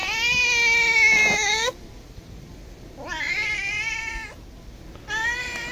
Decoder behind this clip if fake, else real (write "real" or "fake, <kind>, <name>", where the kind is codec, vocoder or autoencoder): real